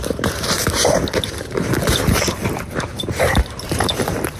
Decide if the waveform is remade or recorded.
remade